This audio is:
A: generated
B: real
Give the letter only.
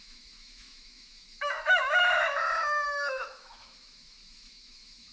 A